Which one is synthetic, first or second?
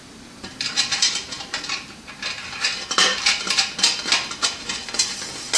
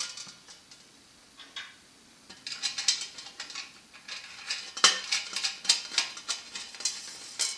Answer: first